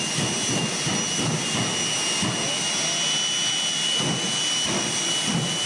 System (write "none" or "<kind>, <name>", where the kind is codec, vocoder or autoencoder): none